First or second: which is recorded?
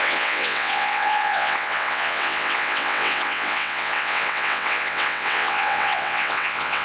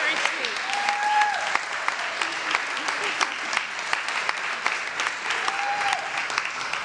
second